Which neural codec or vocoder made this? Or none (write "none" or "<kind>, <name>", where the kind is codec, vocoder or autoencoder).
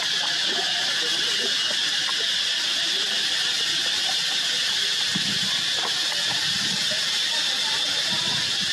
none